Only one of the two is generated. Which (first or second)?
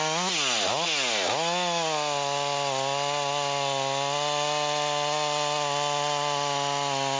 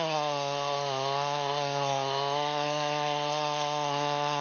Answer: second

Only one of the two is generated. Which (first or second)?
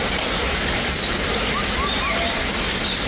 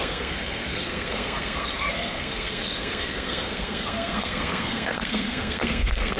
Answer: second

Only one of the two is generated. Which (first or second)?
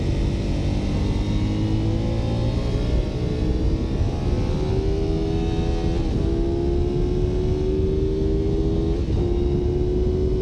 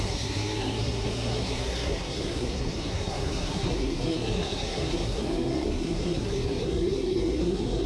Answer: second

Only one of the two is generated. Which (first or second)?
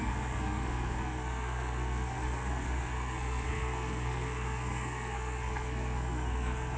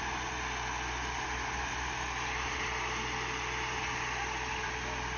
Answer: first